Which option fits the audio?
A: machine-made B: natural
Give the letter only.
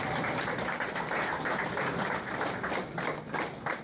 B